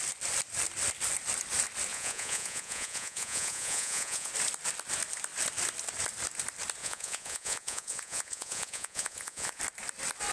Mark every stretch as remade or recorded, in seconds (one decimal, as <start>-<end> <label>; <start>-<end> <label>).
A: 0.0-1.9 recorded; 1.9-4.3 remade; 4.3-6.8 recorded; 6.8-9.6 remade; 9.6-10.3 recorded